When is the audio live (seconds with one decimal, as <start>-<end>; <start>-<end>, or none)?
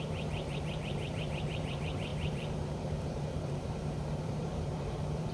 none